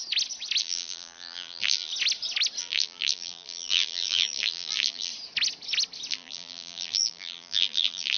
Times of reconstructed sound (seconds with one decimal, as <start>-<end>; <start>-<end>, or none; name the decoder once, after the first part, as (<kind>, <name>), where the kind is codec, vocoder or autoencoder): 0.6-1.9 (vocoder, BigVGAN v2); 2.6-5.1; 6.1-8.2